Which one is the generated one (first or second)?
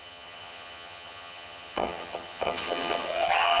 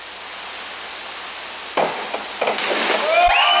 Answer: first